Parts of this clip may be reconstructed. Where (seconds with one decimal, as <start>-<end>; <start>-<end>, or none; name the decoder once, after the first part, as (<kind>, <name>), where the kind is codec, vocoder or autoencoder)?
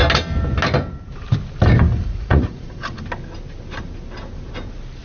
1.9-3.0 (vocoder, Vocos)